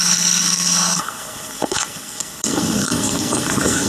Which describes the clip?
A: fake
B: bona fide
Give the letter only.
A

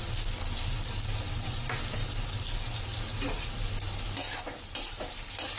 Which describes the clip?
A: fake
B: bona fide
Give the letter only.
B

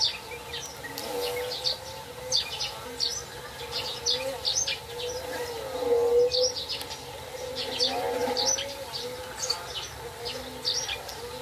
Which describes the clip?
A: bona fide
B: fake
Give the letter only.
A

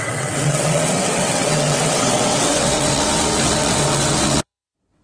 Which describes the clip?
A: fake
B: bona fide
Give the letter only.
A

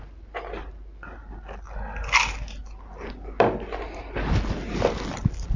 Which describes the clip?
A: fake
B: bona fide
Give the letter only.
B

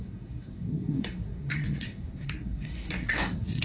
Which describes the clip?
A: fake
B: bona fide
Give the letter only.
A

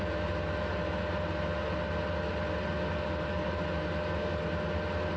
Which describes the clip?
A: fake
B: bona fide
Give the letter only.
B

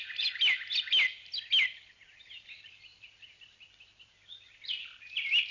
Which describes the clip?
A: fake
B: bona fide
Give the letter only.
B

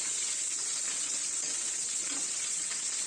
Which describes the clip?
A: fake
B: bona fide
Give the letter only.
A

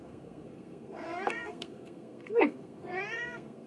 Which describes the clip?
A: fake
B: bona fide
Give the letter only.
A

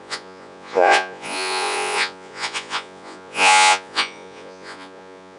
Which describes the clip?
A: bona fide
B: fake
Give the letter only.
B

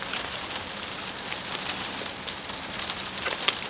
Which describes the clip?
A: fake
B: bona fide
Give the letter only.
A